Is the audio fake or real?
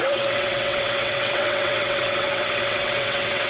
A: fake